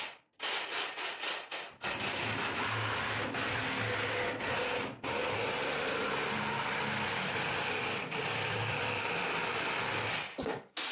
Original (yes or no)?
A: yes